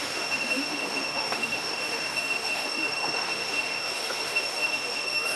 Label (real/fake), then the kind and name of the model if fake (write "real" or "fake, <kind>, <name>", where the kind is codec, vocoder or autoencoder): fake, autoencoder, DAC-VAE